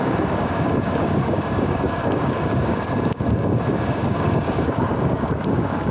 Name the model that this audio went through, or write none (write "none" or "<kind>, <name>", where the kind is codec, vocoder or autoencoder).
codec, DAC